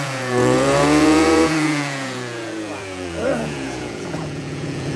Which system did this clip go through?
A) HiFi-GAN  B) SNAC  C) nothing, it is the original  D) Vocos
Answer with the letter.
D